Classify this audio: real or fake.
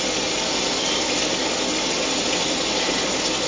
real